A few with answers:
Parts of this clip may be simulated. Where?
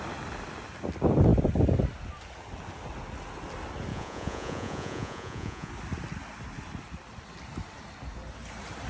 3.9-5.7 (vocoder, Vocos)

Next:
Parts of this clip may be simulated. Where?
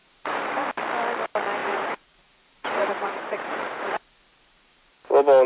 0.0-0.7 (vocoder, Vocos); 1.6-4.9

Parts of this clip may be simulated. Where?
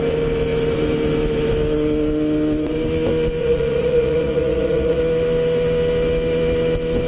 3.4-5.0 (vocoder, Vocos)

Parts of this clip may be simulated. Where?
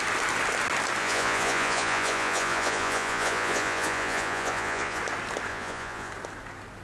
1.0-5.0 (vocoder, Vocos); 5.5-6.1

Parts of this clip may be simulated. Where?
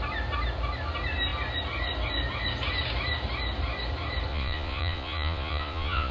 4.3-6.1 (vocoder, Vocos)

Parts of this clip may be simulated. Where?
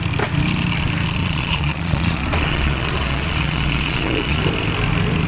1.2-4.4 (vocoder, Vocos)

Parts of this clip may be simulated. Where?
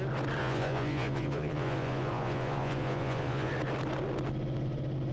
0.4-3.5 (vocoder, Vocos)